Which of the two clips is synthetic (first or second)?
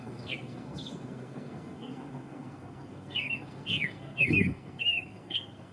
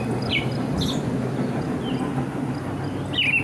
first